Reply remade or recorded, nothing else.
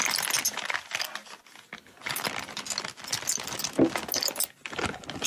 recorded